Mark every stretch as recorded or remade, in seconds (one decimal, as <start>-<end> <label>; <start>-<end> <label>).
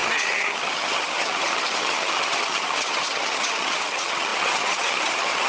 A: 0.0-5.5 remade